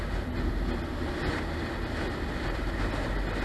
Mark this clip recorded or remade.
recorded